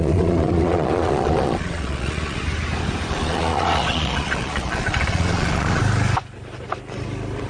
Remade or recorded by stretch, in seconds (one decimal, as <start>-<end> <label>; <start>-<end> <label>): 0.0-2.4 remade; 2.4-3.1 recorded; 3.1-5.8 remade; 5.8-7.5 recorded